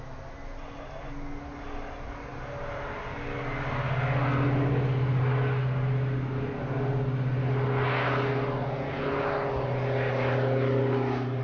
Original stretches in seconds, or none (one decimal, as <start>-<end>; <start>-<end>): 0.0-11.4